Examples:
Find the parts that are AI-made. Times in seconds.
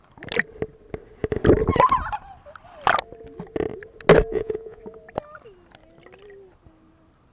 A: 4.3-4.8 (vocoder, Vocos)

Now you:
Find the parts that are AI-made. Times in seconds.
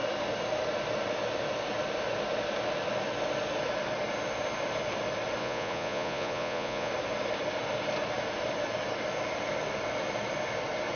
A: 5.4-6.9 (vocoder, Vocos)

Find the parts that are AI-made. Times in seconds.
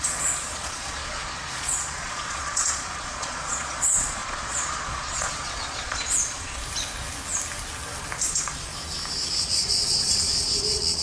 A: 0.0-6.6 (vocoder, Vocos); 8.2-8.7; 9.4-11.0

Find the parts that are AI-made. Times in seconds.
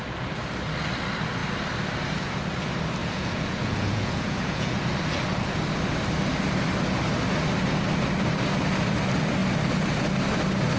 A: 3.0-4.9 (vocoder, Vocos)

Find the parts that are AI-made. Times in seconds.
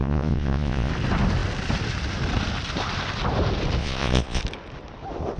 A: 0.0-0.9 (vocoder, Vocos); 3.8-4.4